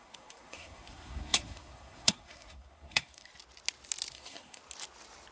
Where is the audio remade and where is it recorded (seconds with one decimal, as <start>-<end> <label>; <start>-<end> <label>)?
0.0-3.3 remade; 3.3-4.1 recorded; 4.1-4.6 remade; 4.6-5.3 recorded